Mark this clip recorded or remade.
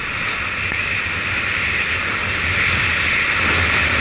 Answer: recorded